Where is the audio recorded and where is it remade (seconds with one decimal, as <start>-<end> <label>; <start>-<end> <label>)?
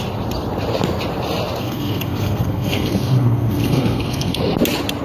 0.0-1.6 recorded; 1.6-4.4 remade; 4.4-5.0 recorded